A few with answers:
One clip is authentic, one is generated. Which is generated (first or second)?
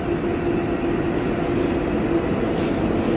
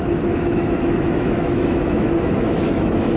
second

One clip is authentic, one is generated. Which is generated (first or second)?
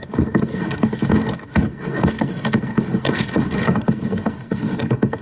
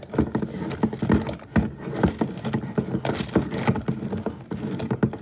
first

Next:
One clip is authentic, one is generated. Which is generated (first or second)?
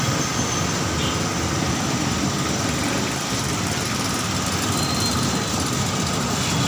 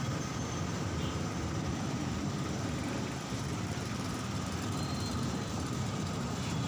second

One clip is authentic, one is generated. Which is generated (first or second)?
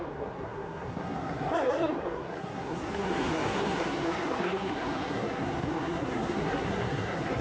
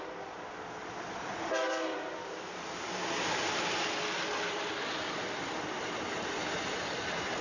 first